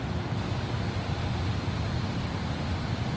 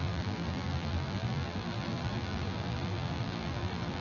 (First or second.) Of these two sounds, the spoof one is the second